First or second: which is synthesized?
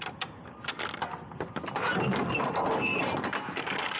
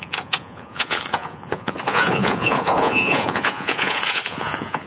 second